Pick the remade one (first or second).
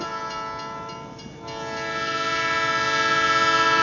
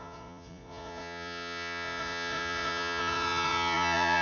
second